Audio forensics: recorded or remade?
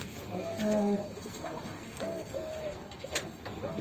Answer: remade